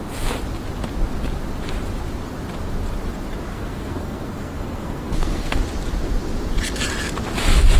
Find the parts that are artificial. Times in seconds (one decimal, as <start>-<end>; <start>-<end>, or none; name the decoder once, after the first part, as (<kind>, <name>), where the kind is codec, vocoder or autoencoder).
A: 3.5-5.6 (codec, SNAC)